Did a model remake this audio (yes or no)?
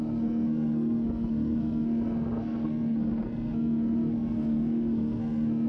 yes